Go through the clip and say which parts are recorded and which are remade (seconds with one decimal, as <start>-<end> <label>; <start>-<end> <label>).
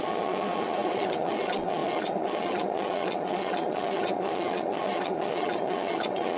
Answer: 0.0-6.4 remade